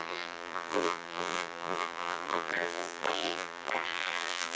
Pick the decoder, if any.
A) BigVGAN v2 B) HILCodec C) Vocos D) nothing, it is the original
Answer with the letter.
A